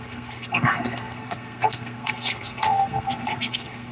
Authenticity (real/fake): fake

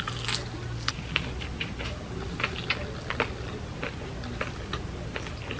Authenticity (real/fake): real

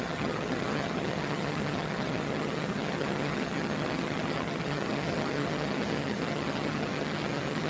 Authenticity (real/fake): fake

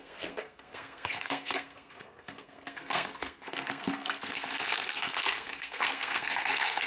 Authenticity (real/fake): fake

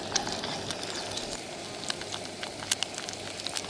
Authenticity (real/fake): real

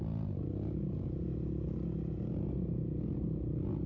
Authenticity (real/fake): real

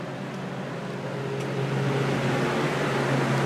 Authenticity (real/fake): real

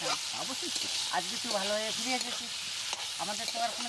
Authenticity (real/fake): real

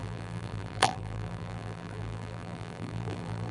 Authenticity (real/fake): fake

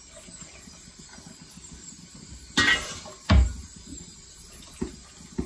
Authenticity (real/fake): real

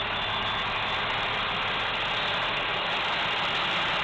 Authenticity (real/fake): real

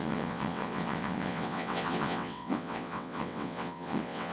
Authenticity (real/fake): fake